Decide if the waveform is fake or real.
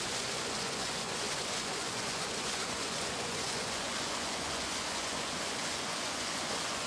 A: fake